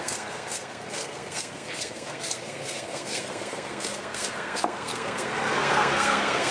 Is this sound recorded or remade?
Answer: remade